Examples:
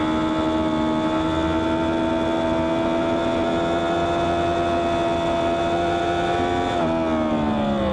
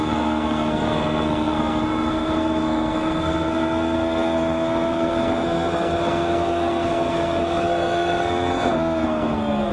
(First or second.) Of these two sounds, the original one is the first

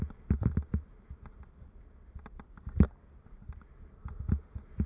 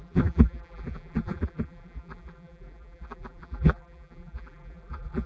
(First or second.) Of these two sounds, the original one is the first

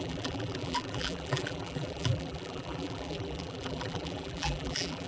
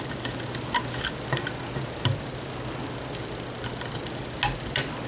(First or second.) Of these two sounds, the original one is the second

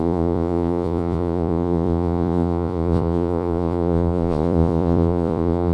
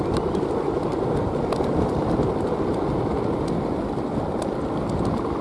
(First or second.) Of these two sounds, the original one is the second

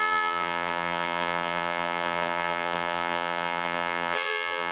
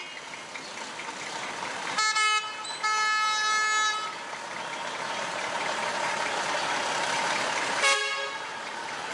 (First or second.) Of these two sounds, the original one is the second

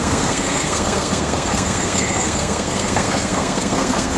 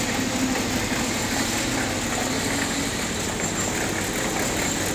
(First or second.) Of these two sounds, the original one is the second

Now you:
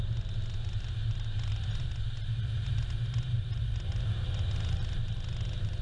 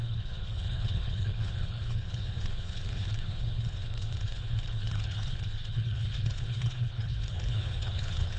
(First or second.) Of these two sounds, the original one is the first